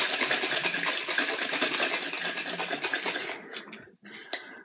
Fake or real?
real